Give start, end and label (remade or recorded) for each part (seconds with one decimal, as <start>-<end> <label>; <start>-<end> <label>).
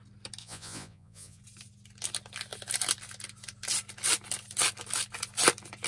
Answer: 0.0-0.4 recorded; 0.4-1.4 remade; 1.4-5.9 recorded